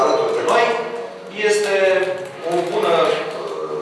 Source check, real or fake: real